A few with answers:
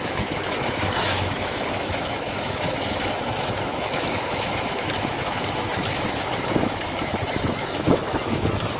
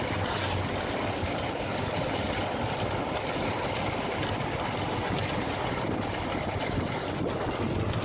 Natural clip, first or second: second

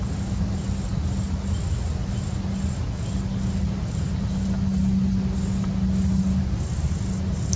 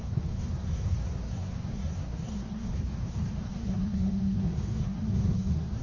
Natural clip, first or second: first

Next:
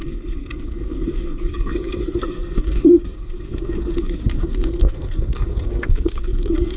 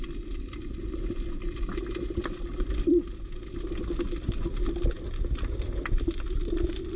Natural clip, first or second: second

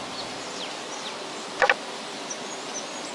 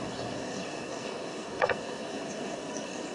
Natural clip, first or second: first